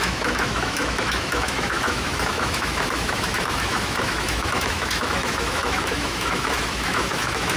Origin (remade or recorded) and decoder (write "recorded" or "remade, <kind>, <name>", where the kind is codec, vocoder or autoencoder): remade, autoencoder, DAC-VAE